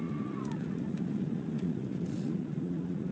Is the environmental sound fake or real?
fake